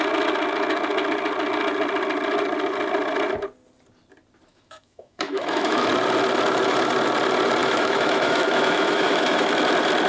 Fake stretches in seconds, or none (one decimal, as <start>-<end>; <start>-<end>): 4.5-5.9; 7.6-9.5